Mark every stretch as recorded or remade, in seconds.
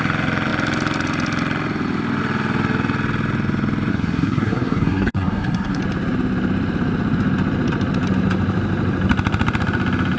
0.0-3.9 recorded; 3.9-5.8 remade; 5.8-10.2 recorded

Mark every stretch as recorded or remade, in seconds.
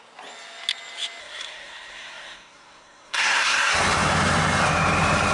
0.0-1.2 recorded; 1.2-3.7 remade; 3.7-5.3 recorded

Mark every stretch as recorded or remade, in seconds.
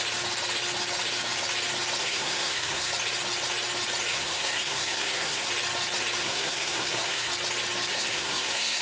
0.0-2.0 recorded; 2.0-2.9 remade; 2.9-4.1 recorded; 4.1-5.5 remade; 5.5-6.2 recorded; 6.2-7.3 remade; 7.3-7.9 recorded; 7.9-8.8 remade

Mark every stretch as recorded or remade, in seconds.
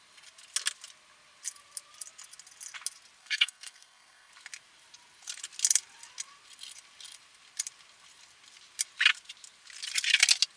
0.0-3.2 recorded; 3.2-4.3 remade; 4.3-10.6 recorded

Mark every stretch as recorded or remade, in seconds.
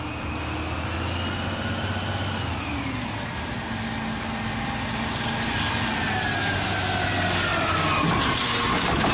0.0-9.1 recorded